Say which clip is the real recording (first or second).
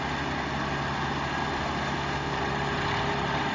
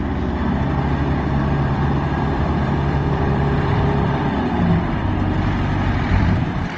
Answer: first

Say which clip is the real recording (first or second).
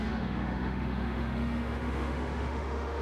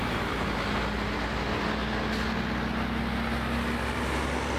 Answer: second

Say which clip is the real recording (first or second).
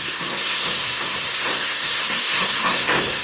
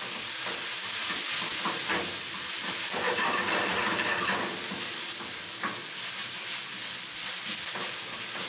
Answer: second